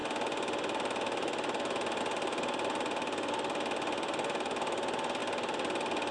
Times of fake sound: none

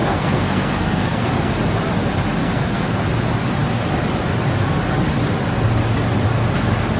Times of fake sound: 0.0-1.5 (codec, SNAC); 2.4-3.0

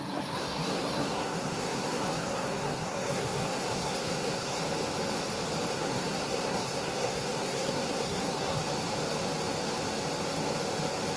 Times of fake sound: 0.0-4.6 (codec, SNAC); 5.7-8.6

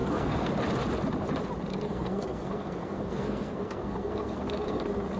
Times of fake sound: 0.0-0.5 (codec, SNAC); 1.7-4.8